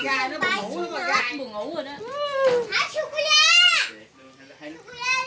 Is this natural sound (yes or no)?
yes